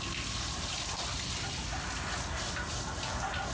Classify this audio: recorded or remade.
recorded